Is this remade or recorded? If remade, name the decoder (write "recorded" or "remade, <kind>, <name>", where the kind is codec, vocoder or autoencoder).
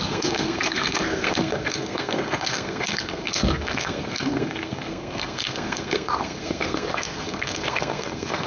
remade, codec, SNAC